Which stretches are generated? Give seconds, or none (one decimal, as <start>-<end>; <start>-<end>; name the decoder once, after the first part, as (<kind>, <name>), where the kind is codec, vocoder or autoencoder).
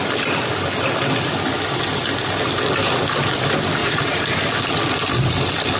3.8-4.3 (vocoder, Vocos)